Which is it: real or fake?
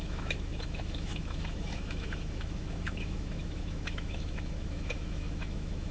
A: fake